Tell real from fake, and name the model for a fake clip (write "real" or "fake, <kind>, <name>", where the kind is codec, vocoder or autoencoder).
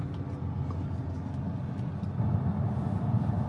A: real